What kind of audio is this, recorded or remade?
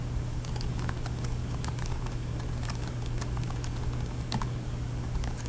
remade